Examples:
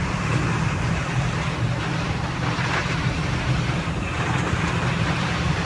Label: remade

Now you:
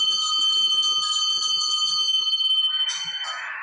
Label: recorded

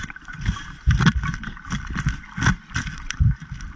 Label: recorded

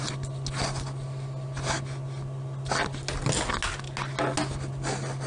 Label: recorded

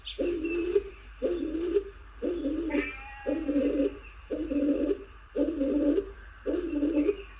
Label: remade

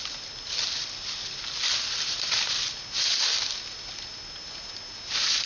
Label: recorded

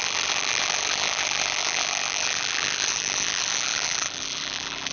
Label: remade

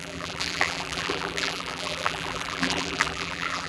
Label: remade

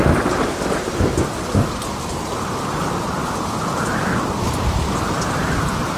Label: recorded